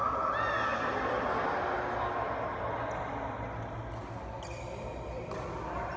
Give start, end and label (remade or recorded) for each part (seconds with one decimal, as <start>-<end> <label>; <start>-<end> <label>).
0.0-6.0 recorded